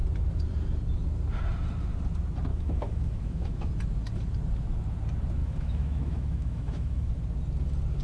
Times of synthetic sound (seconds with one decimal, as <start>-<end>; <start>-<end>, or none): 2.5-3.7; 5.4-7.1